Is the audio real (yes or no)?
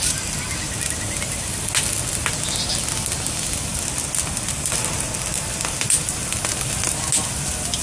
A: yes